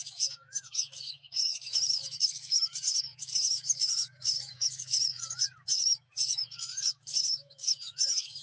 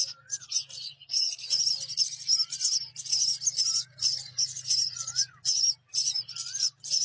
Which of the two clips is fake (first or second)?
first